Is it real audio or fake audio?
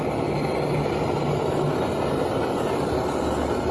real